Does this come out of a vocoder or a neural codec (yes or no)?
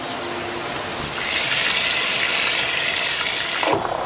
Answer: no